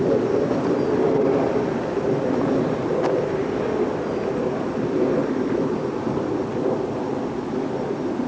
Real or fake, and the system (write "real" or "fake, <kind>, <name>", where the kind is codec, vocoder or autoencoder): real